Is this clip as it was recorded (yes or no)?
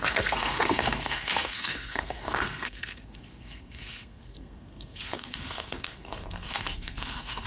no